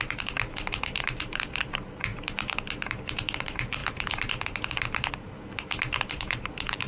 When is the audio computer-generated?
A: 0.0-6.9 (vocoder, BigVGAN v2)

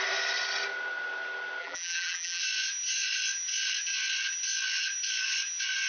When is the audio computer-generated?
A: 1.6-2.4 (vocoder, BigVGAN v2)

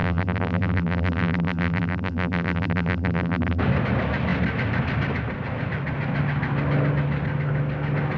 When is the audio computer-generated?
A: 0.0-3.6 (vocoder, BigVGAN v2)

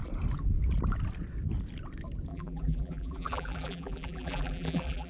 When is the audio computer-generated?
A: 2.3-5.1 (vocoder, BigVGAN v2)